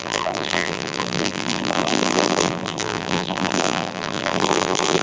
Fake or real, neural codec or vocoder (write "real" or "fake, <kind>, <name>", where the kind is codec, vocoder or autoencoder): fake, vocoder, BigVGAN v2